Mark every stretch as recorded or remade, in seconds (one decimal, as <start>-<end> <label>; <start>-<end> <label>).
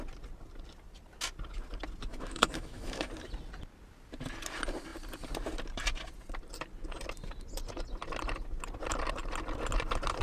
0.0-2.1 recorded; 2.1-3.1 remade; 3.1-10.2 recorded